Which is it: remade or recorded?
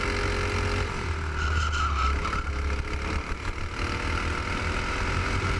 recorded